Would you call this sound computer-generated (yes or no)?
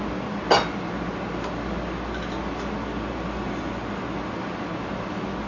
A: no